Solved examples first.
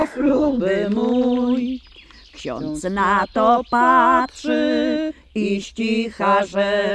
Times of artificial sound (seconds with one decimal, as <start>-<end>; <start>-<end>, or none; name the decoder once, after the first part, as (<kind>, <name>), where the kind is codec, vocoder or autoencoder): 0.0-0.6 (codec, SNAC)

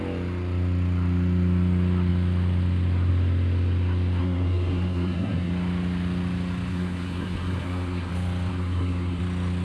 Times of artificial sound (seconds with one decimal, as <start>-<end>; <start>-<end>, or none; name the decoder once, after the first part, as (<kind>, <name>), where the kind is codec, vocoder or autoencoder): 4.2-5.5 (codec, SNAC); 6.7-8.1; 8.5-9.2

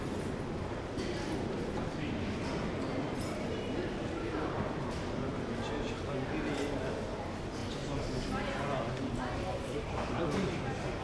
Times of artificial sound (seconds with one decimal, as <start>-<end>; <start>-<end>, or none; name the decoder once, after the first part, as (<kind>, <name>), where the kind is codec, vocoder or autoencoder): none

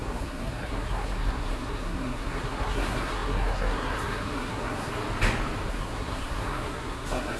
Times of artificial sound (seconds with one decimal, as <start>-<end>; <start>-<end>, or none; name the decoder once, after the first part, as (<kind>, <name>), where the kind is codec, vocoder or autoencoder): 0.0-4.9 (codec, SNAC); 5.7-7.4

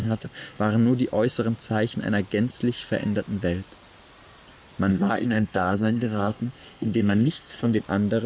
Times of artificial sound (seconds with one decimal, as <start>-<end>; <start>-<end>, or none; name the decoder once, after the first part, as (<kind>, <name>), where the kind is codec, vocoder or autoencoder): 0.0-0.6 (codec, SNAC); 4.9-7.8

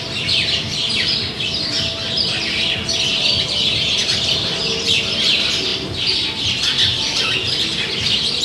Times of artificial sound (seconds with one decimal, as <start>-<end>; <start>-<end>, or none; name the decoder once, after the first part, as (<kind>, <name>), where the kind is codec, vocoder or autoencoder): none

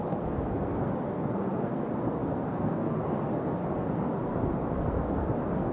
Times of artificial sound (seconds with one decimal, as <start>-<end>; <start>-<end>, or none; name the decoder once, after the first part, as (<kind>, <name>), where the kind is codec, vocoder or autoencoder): 0.0-5.7 (codec, SNAC)